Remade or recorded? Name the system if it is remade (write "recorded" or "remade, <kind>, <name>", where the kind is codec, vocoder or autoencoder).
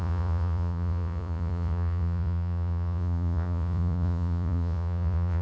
remade, vocoder, Vocos